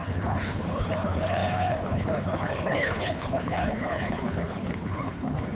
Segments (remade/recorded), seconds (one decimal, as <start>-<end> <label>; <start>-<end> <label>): 0.0-5.5 remade

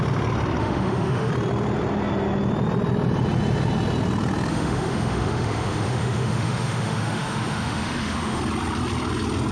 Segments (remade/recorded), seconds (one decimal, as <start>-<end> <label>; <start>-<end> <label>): 0.0-0.6 recorded; 0.6-1.3 remade; 1.3-4.5 recorded; 4.5-8.4 remade; 8.4-9.5 recorded

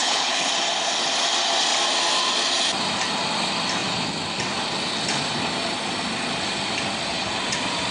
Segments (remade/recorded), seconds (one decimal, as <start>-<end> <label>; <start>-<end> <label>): 0.0-0.5 remade; 0.5-7.9 recorded

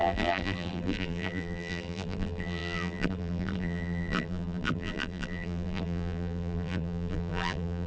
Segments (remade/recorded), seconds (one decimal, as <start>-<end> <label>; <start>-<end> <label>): 0.0-7.9 remade